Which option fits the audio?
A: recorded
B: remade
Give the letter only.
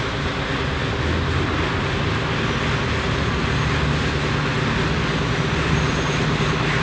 A